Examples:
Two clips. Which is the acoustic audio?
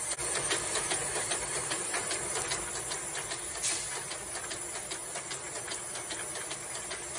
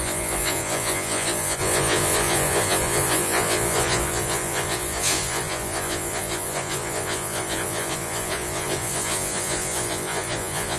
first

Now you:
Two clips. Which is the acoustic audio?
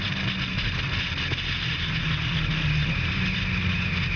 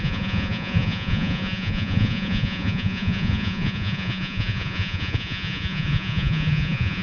first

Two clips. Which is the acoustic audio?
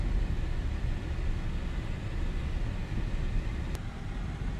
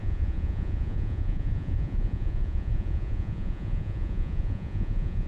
first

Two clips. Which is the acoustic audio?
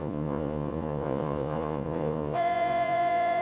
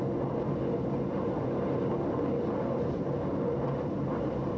second